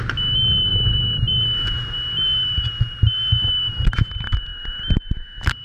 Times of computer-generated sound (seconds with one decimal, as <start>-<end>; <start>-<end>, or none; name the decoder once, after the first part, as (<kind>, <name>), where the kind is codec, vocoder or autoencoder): none

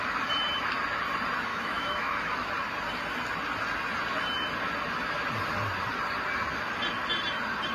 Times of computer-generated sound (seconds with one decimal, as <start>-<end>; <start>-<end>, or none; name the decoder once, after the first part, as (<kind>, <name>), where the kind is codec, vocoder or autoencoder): 1.5-2.5 (autoencoder, DAC-VAE)

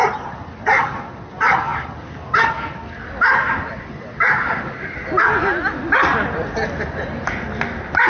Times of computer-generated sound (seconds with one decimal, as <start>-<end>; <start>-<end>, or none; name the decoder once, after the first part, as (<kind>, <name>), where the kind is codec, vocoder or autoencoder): none

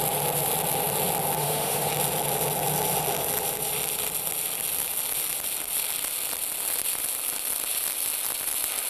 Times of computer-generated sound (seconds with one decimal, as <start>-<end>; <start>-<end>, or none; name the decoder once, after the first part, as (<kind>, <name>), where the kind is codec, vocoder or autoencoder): 1.4-1.9 (autoencoder, DAC-VAE)

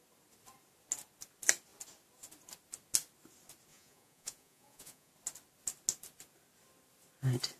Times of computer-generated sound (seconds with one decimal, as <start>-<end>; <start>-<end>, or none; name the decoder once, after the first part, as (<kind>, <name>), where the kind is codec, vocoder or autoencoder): 3.7-5.1 (vocoder, Vocos)

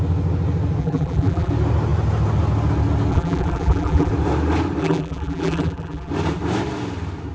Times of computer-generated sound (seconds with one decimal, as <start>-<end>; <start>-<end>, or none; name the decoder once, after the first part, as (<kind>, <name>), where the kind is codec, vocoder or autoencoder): 0.8-1.5 (vocoder, BigVGAN v2); 3.1-4.1; 4.8-6.1

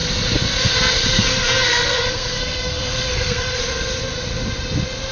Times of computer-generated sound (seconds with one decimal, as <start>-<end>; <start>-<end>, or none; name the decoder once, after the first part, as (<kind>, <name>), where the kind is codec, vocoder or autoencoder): 1.1-3.6 (codec, SNAC)

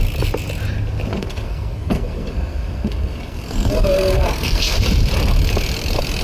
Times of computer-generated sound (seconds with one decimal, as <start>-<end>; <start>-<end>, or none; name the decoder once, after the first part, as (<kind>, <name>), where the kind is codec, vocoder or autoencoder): 1.1-4.8 (codec, SNAC)